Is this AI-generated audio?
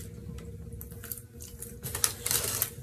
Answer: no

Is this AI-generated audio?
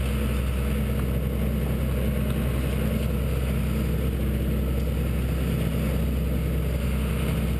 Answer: no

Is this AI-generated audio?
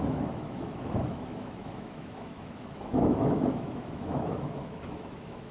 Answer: yes